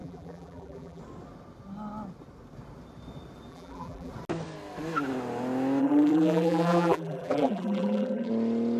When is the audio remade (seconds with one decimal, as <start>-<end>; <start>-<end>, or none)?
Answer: 0.0-1.0; 3.5-4.1; 5.8-8.3